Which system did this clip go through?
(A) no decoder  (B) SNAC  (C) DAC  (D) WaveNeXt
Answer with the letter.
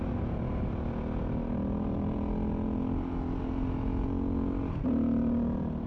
A